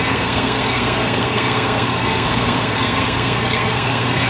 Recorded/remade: remade